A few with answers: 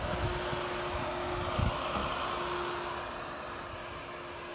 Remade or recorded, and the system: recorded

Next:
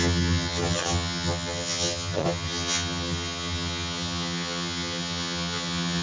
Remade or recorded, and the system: remade, vocoder, HiFi-GAN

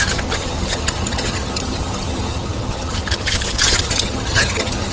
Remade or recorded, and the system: remade, vocoder, HiFi-GAN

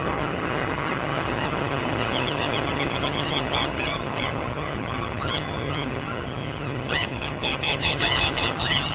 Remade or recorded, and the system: remade, vocoder, HiFi-GAN